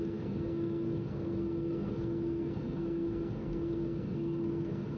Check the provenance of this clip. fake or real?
fake